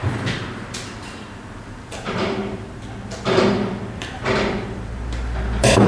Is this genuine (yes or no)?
no